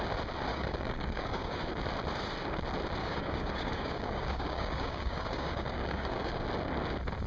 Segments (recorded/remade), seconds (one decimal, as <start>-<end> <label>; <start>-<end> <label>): 0.0-0.5 recorded; 0.5-1.6 remade; 1.6-3.0 recorded; 3.0-6.4 remade; 6.4-7.3 recorded